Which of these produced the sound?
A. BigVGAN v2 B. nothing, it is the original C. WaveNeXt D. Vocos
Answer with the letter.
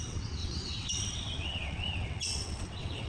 C